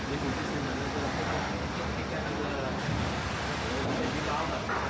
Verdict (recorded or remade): recorded